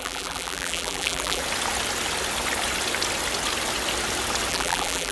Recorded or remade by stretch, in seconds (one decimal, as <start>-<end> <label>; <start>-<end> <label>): 0.0-1.4 remade; 1.4-4.5 recorded; 4.5-5.1 remade